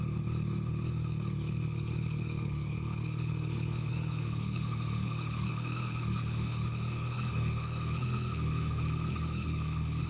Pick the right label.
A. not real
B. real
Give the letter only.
A